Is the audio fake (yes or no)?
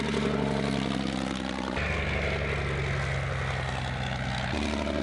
no